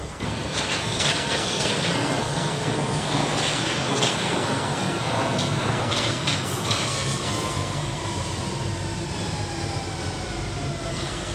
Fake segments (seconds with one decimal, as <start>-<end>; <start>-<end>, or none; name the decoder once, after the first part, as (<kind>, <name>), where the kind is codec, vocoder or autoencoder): 0.0-8.0 (codec, SNAC); 10.9-11.3

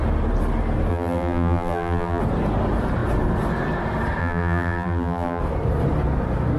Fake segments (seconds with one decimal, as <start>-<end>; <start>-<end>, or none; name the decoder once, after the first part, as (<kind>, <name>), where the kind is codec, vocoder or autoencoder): 0.9-2.2 (vocoder, BigVGAN v2); 4.2-5.4

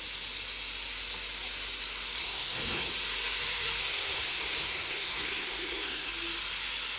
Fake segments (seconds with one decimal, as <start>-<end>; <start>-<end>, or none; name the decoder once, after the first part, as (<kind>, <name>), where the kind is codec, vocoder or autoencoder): 2.2-2.9 (codec, SNAC); 3.8-6.1

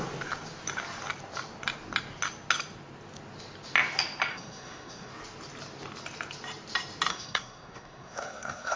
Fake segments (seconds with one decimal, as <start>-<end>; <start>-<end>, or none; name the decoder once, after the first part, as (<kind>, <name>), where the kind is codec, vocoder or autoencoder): 4.3-5.1 (codec, SNAC); 7.1-8.8

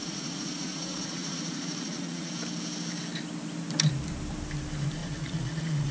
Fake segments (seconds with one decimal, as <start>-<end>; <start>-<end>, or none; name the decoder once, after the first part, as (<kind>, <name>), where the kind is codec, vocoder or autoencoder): 0.0-2.3 (vocoder, Vocos); 5.0-5.9

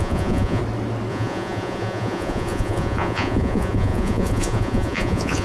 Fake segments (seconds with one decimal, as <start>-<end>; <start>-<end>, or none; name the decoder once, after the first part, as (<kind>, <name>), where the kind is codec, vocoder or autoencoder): 0.0-0.6 (vocoder, Vocos); 1.1-5.4

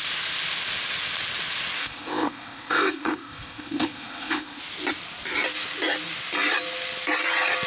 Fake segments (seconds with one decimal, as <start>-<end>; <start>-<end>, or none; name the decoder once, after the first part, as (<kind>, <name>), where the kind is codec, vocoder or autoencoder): 1.8-4.6 (codec, ZipCodec)

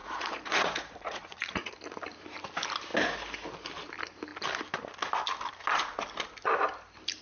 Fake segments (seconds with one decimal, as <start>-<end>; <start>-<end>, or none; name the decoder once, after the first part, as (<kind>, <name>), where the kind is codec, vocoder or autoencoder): 0.0-1.7 (vocoder, Vocos)